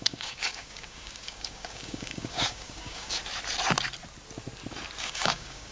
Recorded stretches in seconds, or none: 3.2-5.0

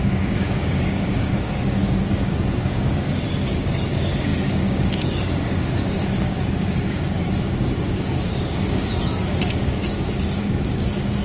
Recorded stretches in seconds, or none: none